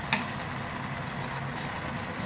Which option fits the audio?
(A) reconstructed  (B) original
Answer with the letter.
B